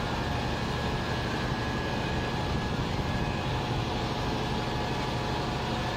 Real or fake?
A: real